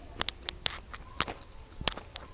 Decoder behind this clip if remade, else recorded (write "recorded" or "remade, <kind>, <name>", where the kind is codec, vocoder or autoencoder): recorded